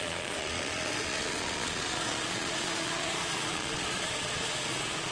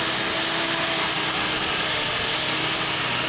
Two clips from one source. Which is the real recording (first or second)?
second